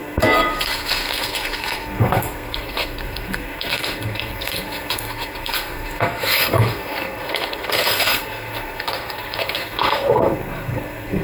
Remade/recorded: remade